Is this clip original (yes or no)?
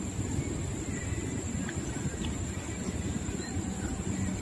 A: yes